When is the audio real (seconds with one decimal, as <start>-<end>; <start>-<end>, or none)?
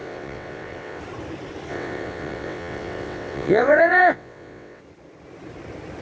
1.0-1.7; 4.8-6.0